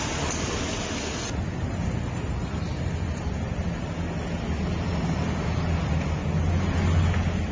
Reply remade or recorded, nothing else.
recorded